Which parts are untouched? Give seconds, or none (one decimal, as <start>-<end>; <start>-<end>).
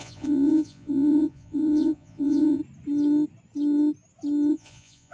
2.6-4.5